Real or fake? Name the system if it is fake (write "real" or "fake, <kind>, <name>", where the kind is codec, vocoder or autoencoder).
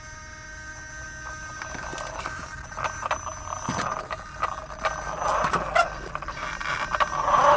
real